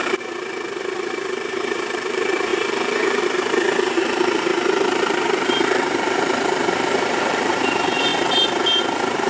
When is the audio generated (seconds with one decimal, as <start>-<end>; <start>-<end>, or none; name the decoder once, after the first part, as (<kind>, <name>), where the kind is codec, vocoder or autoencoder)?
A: 0.0-8.1 (vocoder, BigVGAN v2); 8.8-9.3